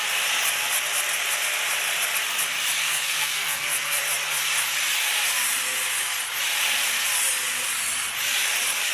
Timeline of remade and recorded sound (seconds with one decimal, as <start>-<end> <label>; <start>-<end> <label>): 0.0-2.8 recorded; 2.8-4.0 remade; 4.0-8.9 recorded